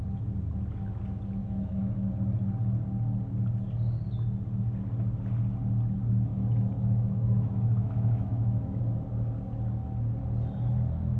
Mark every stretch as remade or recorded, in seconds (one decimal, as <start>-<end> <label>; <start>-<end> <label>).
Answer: 0.0-1.4 recorded; 1.4-2.1 remade; 2.1-6.3 recorded; 6.3-8.8 remade; 8.8-11.2 recorded